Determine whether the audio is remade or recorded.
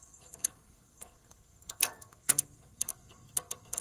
remade